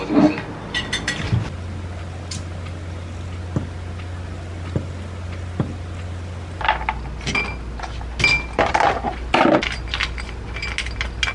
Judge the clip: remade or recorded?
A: recorded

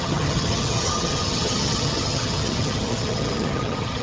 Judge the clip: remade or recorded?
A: remade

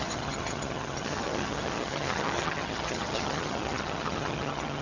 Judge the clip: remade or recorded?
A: remade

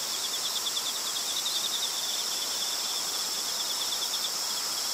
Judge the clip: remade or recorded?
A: remade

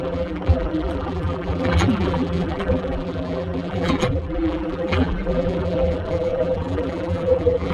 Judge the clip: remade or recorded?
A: remade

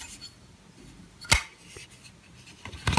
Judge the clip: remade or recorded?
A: recorded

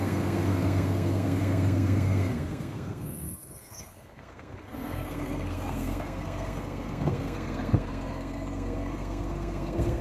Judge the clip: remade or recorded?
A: remade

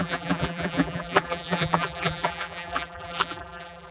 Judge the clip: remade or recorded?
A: remade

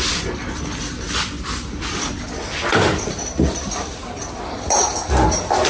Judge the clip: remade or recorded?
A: recorded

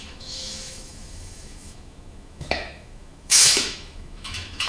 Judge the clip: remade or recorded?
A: remade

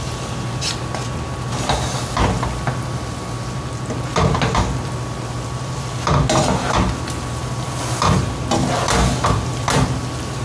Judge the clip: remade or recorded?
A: recorded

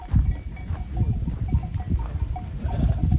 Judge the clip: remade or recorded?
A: recorded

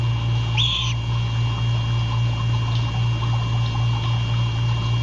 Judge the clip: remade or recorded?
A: recorded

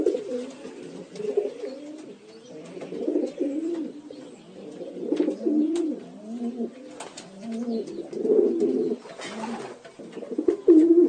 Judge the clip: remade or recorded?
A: recorded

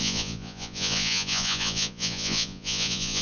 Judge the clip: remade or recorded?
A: remade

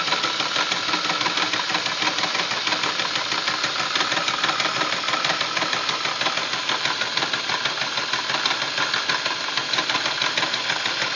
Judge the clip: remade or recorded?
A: recorded